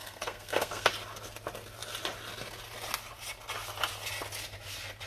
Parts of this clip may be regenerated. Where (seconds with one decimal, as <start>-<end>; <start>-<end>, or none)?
0.0-0.9